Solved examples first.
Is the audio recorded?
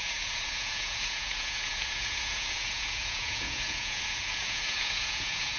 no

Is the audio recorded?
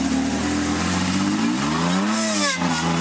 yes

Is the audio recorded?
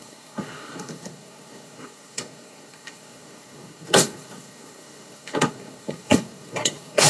no